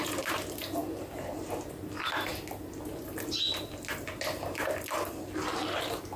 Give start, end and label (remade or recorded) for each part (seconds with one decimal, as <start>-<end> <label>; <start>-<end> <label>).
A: 0.0-6.2 recorded